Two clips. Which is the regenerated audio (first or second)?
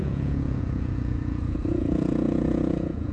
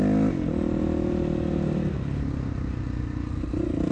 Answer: first